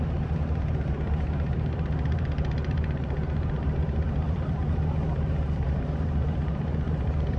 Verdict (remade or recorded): remade